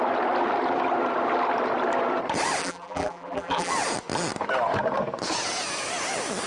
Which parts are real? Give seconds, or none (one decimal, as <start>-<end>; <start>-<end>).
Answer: 0.0-2.6; 3.7-6.5